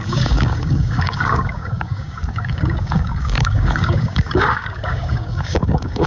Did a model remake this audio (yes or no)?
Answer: yes